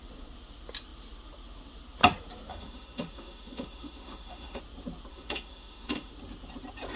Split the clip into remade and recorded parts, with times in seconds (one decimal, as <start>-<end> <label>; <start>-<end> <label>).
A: 0.0-2.5 recorded; 2.5-4.6 remade; 4.6-5.1 recorded; 5.1-6.1 remade; 6.1-7.0 recorded